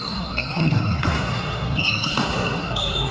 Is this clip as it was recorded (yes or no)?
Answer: no